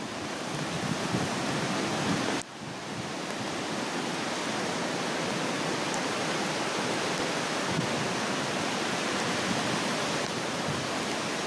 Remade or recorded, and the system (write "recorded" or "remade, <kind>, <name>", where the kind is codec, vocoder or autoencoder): recorded